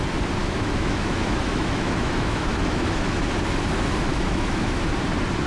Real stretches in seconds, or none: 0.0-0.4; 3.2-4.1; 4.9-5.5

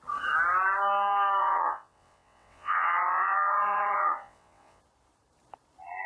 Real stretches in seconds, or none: 0.0-1.4; 4.8-6.1

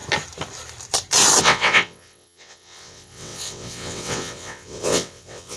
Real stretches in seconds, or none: 0.0-1.4

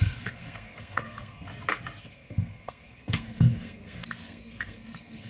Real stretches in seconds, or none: 1.5-2.0

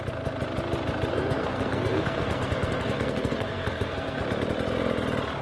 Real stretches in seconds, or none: 0.0-1.1; 4.2-5.4

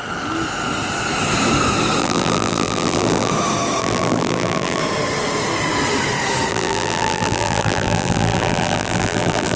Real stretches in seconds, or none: 0.0-2.0; 3.3-3.8; 4.8-6.5

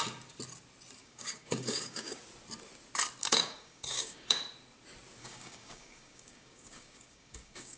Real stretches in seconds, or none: 0.0-1.0; 2.2-3.2; 4.4-5.2